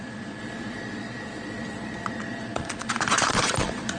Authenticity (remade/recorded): remade